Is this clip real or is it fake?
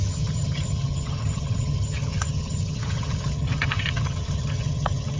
fake